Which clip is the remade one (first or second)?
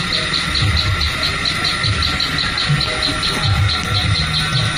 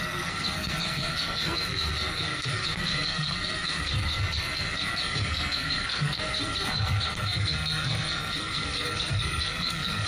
second